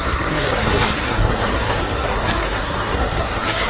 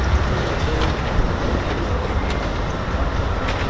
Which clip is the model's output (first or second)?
first